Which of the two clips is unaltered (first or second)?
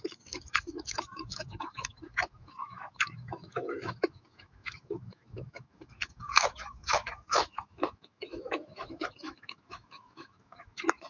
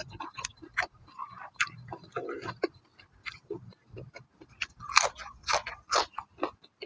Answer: second